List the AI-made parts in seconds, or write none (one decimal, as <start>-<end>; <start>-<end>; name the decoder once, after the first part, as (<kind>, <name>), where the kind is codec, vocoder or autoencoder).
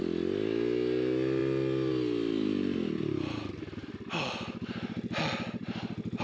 none